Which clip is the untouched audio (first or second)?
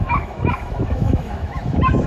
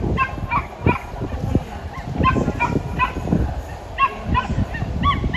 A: second